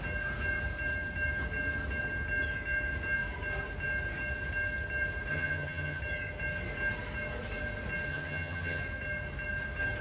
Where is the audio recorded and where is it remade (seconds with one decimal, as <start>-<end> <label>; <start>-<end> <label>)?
0.0-5.3 recorded; 5.3-6.0 remade; 6.0-8.1 recorded; 8.1-8.8 remade; 8.8-10.0 recorded